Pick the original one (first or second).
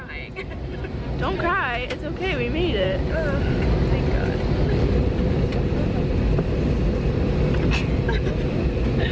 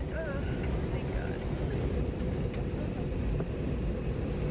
first